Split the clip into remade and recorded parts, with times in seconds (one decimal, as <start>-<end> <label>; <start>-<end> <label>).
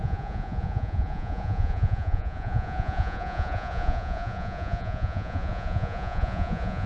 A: 0.0-6.9 remade